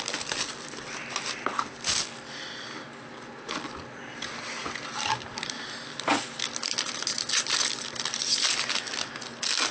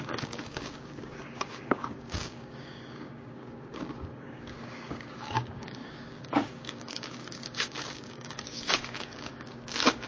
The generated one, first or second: second